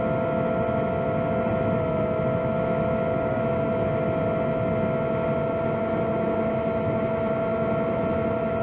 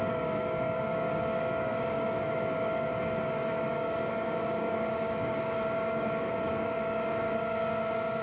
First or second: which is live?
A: first